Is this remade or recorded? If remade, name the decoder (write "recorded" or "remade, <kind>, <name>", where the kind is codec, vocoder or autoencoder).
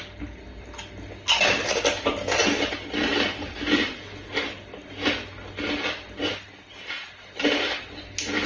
recorded